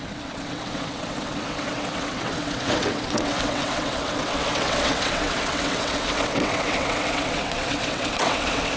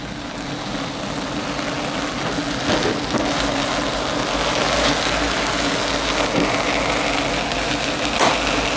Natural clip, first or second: second